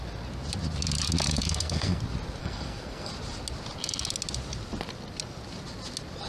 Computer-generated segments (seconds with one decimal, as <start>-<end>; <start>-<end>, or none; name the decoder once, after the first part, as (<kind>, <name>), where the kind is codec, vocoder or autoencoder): 1.4-2.0 (codec, SNAC); 2.4-3.1